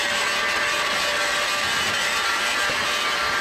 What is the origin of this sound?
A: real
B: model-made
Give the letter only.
A